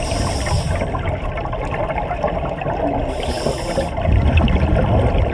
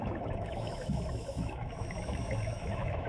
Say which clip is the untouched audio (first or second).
first